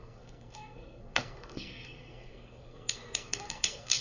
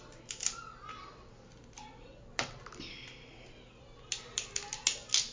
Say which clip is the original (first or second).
second